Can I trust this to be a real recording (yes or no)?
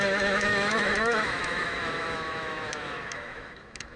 no